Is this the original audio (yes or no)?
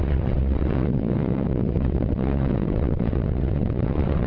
no